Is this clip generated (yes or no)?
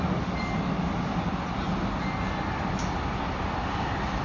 no